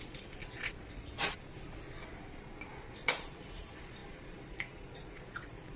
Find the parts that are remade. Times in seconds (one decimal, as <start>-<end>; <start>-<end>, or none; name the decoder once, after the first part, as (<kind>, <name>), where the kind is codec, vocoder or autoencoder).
0.0-5.8 (vocoder, Vocos)